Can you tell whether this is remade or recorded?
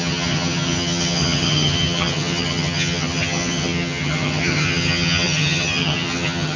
remade